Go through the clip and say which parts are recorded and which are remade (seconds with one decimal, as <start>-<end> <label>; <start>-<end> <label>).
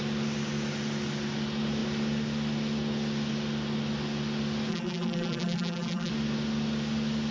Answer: 0.0-4.7 recorded; 4.7-6.1 remade; 6.1-7.3 recorded